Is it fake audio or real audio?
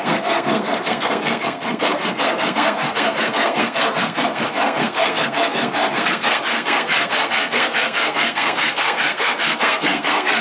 fake